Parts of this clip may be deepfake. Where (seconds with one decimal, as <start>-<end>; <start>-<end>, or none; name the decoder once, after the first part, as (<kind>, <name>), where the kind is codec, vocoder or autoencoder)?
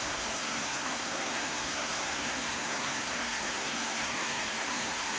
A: 0.0-5.2 (codec, SNAC)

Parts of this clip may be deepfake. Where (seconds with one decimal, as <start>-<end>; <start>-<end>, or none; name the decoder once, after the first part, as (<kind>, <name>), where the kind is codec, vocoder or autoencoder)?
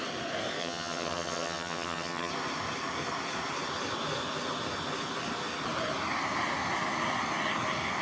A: 0.6-2.3 (vocoder, HiFi-GAN)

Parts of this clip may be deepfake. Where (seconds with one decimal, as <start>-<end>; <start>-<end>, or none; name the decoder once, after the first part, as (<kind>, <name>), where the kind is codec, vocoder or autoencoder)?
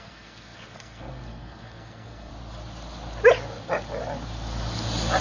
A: 0.0-2.3 (codec, SNAC)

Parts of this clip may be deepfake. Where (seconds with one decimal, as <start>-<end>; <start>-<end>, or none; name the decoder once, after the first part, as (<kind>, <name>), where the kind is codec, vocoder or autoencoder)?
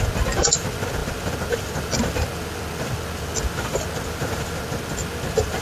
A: none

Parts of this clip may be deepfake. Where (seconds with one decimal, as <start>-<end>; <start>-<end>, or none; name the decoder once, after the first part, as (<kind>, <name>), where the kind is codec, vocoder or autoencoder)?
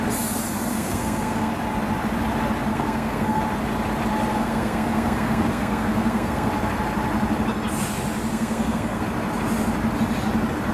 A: 0.7-1.5 (codec, SNAC); 2.7-3.4; 4.3-6.5; 8.3-9.0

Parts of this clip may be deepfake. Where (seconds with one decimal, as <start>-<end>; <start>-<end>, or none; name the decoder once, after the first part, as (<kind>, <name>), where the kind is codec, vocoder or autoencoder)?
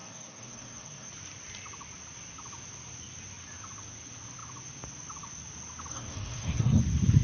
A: 0.0-1.1 (codec, SNAC); 5.9-6.8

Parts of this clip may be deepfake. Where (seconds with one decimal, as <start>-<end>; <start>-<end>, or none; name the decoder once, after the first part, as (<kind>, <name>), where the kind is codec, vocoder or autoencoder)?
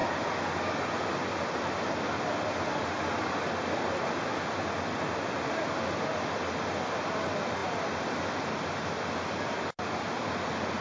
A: none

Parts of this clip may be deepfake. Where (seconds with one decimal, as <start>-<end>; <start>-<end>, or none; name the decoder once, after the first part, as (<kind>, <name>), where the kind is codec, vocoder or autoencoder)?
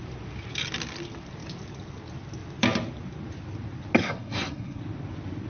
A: 4.0-4.8 (codec, SNAC)